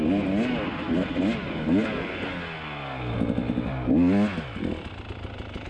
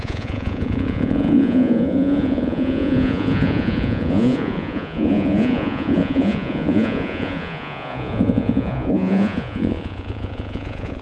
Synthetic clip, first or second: second